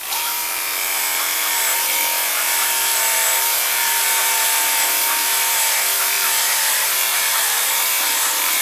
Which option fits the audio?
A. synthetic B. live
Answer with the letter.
A